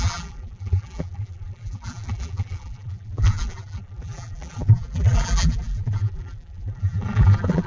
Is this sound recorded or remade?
remade